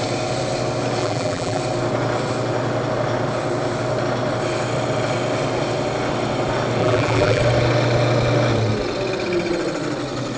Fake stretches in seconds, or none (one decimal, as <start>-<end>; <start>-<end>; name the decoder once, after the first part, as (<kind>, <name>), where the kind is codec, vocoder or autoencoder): 1.0-1.6 (vocoder, BigVGAN v2); 6.8-7.4